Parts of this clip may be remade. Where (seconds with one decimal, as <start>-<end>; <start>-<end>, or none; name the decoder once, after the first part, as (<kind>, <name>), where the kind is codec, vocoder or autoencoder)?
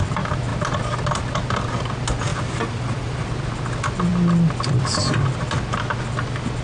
2.3-3.3 (vocoder, BigVGAN v2)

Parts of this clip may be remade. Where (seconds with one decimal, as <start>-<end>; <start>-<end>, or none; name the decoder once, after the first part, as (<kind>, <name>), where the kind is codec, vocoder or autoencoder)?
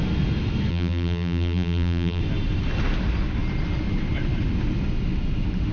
0.7-2.2 (vocoder, BigVGAN v2)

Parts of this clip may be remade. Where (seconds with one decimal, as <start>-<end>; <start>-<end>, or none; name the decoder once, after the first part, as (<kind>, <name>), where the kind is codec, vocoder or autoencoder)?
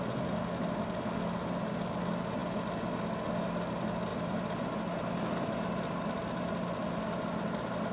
4.1-4.7 (vocoder, BigVGAN v2)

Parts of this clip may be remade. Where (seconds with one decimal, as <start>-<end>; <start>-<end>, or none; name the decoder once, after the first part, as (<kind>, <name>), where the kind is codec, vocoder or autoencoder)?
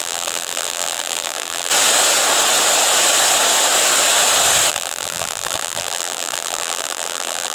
0.0-1.7 (vocoder, BigVGAN v2); 4.7-7.5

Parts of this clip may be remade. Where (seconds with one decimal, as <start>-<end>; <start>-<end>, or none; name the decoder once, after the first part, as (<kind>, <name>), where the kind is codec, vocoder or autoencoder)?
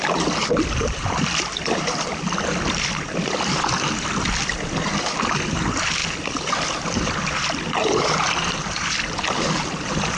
0.0-6.0 (vocoder, BigVGAN v2); 6.9-10.2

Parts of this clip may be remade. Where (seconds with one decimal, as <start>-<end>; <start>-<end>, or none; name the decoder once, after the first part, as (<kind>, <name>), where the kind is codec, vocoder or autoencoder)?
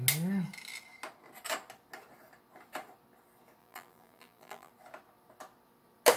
3.6-4.7 (vocoder, BigVGAN v2)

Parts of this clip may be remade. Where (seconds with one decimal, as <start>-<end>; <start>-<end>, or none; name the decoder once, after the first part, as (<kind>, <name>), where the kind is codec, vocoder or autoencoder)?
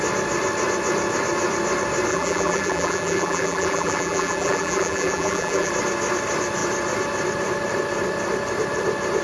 2.1-5.7 (vocoder, BigVGAN v2)